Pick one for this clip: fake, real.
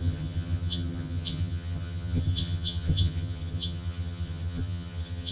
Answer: fake